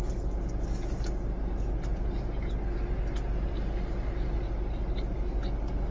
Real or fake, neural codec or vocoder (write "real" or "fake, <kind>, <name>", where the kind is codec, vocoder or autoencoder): real